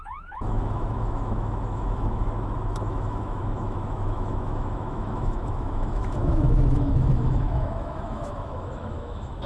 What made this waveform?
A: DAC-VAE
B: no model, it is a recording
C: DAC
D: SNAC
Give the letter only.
A